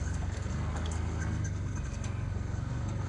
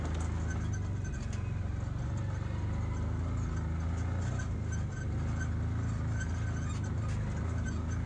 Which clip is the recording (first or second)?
second